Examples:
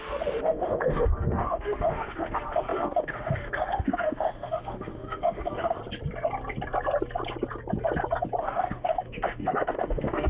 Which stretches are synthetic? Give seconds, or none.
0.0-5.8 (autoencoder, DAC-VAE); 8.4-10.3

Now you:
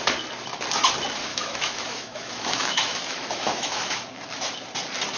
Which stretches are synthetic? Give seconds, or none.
1.3-4.0 (autoencoder, DAC-VAE)

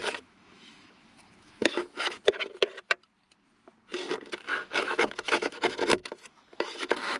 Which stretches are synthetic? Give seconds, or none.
0.0-2.2 (autoencoder, DAC-VAE); 4.5-7.2

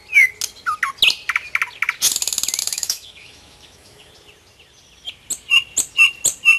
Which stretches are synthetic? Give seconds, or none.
2.6-4.1 (autoencoder, DAC-VAE)

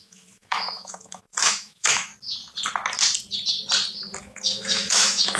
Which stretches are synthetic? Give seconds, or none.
0.0-2.1 (autoencoder, DAC-VAE); 4.2-5.4